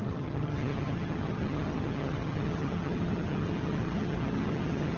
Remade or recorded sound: remade